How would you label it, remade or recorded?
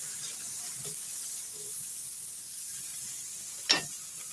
recorded